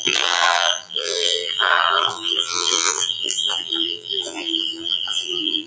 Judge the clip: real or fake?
fake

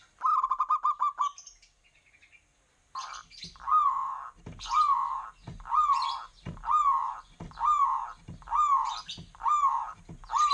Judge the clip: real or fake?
real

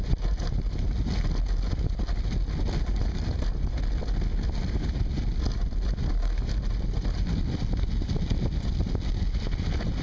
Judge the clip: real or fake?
fake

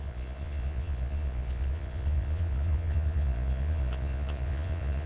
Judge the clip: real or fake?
fake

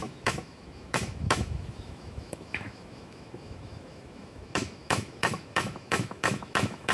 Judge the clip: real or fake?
fake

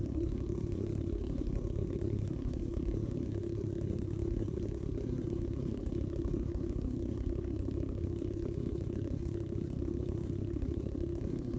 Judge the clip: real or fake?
fake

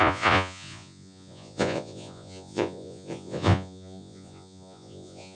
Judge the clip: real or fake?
fake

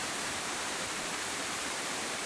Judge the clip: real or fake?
fake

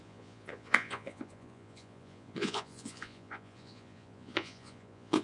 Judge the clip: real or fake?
fake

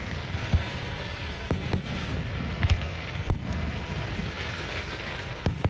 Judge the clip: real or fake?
fake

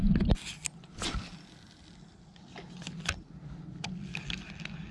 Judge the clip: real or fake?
real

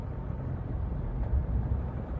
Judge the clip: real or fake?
fake